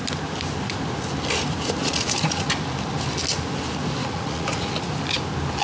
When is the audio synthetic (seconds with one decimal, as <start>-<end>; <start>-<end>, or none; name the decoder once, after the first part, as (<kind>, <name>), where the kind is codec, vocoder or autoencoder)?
1.8-2.5 (vocoder, Vocos); 4.0-4.9